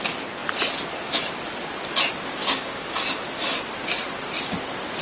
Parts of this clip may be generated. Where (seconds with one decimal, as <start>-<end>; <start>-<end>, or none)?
2.4-3.2